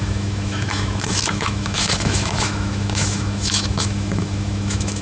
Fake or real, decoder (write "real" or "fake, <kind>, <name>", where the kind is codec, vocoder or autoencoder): fake, autoencoder, DAC-VAE